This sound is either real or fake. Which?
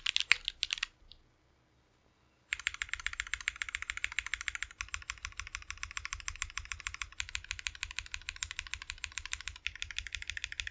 real